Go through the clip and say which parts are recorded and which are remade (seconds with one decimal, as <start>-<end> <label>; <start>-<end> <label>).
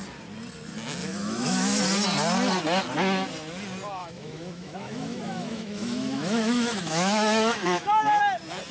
0.0-1.0 recorded; 1.0-1.8 remade; 1.8-4.0 recorded; 4.0-8.2 remade; 8.2-8.7 recorded